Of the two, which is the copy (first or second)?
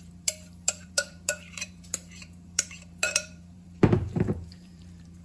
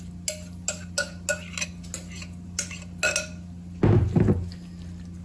first